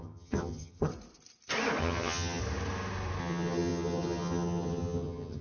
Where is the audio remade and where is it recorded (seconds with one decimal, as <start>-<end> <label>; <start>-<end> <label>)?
0.0-0.9 remade; 0.9-1.8 recorded; 1.8-2.4 remade; 2.4-3.2 recorded; 3.2-5.4 remade